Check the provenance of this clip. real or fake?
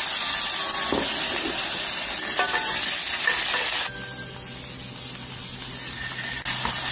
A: real